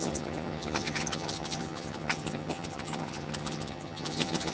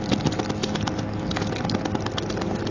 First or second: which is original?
second